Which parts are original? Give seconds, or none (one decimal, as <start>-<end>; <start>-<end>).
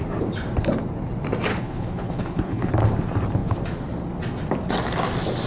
0.0-1.5; 2.7-5.5